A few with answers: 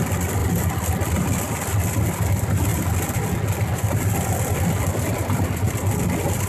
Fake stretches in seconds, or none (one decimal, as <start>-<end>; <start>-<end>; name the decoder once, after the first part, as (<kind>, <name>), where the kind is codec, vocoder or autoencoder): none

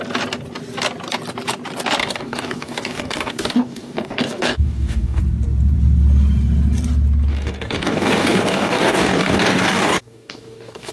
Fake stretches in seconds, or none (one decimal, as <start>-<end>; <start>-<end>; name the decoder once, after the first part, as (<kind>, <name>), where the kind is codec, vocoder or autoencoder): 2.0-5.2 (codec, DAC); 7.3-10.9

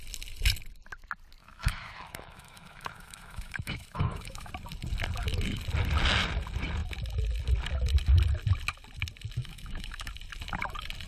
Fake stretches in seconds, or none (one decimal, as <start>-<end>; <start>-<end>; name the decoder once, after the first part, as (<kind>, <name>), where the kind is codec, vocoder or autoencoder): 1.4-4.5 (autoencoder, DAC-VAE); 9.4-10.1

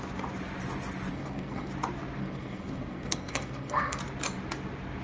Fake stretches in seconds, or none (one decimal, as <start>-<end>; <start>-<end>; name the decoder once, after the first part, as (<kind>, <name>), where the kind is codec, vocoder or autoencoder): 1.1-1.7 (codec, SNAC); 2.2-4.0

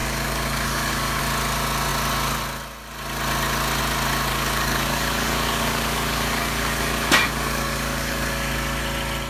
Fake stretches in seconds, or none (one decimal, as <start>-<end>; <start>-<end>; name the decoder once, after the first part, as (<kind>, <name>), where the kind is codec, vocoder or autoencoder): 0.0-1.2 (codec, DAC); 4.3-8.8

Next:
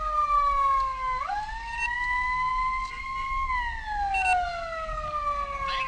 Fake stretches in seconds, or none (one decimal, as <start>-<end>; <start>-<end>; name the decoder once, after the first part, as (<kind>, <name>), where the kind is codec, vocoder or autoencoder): none